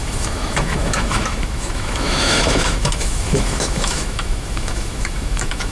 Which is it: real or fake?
fake